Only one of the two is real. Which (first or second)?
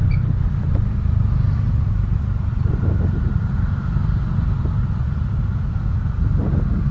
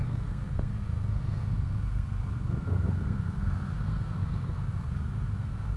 first